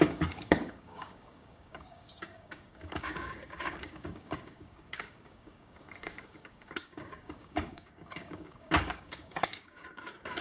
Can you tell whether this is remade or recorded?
remade